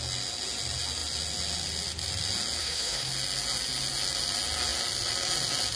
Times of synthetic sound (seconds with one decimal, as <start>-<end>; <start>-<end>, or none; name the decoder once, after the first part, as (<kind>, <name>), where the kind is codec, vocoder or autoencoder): 2.6-3.1 (autoencoder, DAC-VAE)